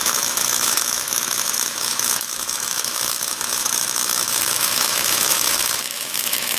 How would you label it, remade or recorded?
remade